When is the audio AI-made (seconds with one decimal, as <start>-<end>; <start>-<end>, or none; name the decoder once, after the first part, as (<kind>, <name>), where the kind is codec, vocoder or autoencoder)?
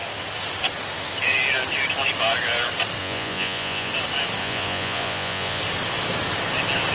3.0-3.9 (vocoder, Vocos); 4.4-5.6